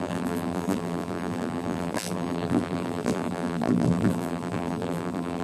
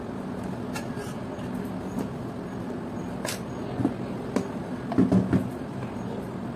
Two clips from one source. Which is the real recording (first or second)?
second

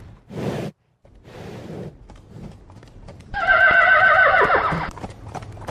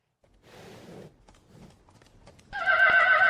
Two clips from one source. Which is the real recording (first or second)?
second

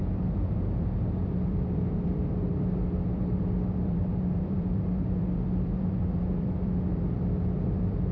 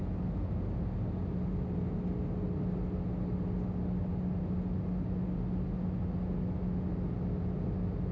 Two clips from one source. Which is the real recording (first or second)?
second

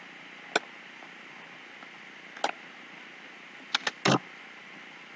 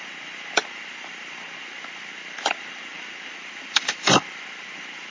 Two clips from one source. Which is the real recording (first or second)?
first